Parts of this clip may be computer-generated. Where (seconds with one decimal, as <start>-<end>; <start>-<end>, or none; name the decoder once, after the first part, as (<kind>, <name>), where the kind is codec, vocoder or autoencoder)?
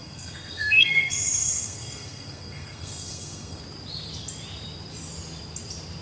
0.0-3.6 (codec, SNAC)